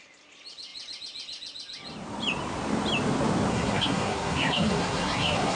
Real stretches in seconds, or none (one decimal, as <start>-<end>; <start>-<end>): 0.0-3.5